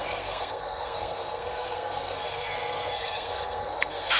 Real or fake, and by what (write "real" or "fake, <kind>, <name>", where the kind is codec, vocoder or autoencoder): fake, codec, SNAC